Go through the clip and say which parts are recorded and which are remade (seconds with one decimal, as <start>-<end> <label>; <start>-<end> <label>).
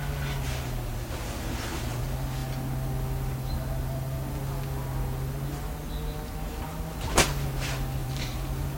0.0-0.9 recorded; 0.9-2.0 remade; 2.0-8.0 recorded; 8.0-8.8 remade